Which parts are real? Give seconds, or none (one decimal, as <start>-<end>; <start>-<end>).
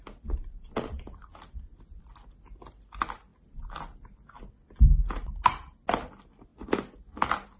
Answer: 0.0-7.6